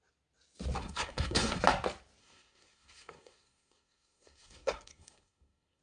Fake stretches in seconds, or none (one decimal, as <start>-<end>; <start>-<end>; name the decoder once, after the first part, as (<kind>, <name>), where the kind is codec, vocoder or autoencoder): 0.8-1.6 (codec, SNAC); 2.2-5.8